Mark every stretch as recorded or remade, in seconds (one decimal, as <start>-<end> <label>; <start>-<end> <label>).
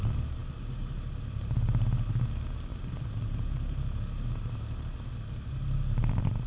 0.0-6.5 recorded